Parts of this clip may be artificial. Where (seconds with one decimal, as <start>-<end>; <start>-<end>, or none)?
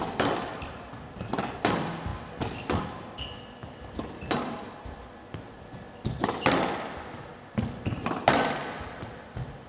3.6-5.4; 7.3-8.6